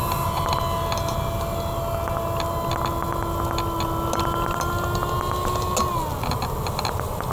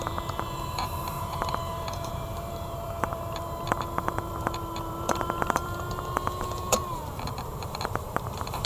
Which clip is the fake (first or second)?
second